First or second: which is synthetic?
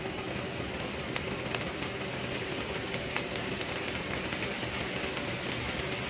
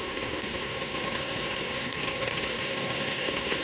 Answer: second